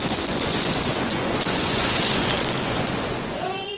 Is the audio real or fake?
fake